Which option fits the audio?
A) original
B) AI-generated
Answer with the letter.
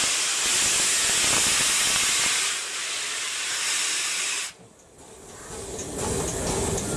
A